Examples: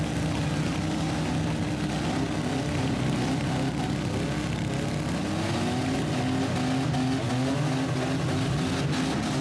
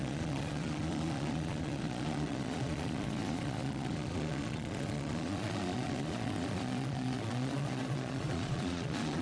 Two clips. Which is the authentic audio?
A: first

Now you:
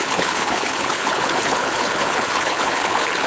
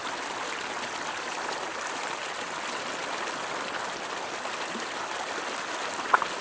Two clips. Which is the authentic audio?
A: second